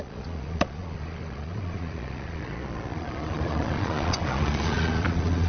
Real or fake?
fake